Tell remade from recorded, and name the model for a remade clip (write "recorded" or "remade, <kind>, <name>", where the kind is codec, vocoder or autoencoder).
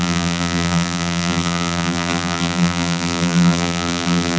remade, vocoder, BigVGAN v2